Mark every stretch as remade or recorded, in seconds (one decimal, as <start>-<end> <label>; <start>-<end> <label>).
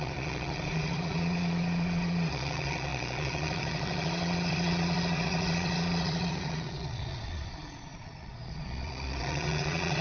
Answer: 0.0-10.0 remade